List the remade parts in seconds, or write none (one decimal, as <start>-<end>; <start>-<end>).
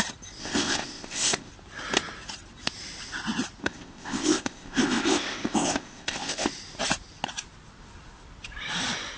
0.4-1.5; 3.6-6.5